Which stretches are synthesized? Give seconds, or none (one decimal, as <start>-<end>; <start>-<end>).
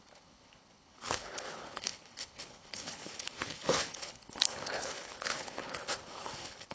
0.0-6.7